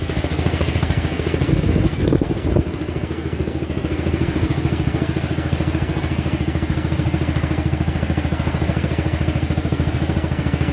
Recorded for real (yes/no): no